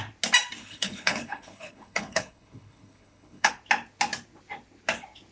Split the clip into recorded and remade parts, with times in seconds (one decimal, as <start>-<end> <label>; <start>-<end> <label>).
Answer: 0.0-0.6 recorded; 0.6-3.5 remade; 3.5-5.3 recorded